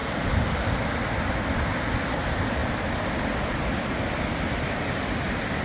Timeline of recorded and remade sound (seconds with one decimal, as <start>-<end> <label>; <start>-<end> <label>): 0.0-5.6 recorded